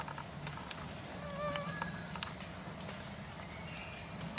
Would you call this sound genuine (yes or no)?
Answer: yes